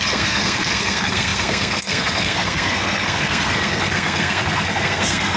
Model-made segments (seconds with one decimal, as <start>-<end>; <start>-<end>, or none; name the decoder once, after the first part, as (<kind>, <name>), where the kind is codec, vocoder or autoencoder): 0.0-5.4 (codec, SNAC)